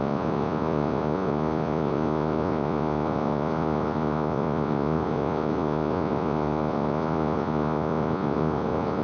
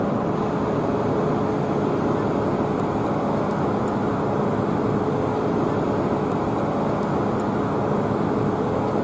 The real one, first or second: second